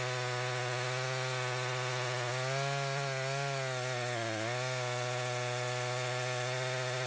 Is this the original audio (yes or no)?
yes